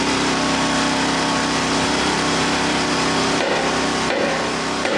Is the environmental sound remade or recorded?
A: recorded